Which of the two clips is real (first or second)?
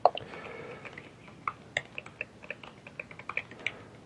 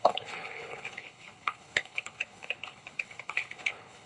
first